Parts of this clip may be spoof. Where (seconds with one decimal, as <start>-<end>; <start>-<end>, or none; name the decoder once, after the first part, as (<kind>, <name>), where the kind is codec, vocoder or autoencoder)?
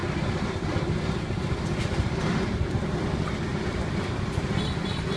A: 0.0-3.1 (vocoder, BigVGAN v2); 3.5-4.7